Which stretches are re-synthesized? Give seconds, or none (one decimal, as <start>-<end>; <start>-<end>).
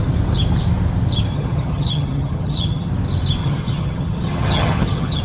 1.3-2.9; 3.4-5.2